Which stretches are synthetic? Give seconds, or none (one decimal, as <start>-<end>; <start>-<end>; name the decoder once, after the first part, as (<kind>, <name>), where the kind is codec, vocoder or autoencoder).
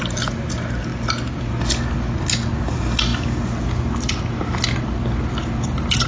none